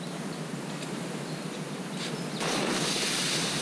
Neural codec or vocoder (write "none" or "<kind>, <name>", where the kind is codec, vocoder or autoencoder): none